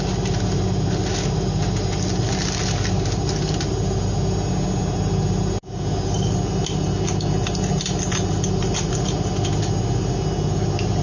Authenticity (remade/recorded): recorded